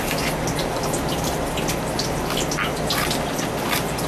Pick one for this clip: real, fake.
real